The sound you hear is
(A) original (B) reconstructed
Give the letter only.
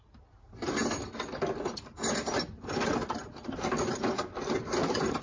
A